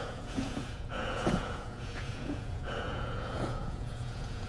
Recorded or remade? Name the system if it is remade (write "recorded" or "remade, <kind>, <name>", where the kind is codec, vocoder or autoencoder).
remade, vocoder, Vocos